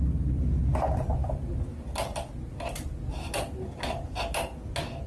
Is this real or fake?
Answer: real